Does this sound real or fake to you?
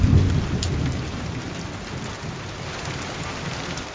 real